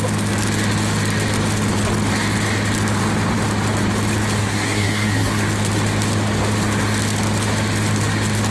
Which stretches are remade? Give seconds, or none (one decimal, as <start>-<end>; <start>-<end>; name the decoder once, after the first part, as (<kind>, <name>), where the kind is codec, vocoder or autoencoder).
4.4-5.4 (codec, SNAC)